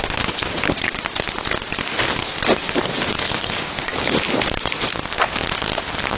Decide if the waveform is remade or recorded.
recorded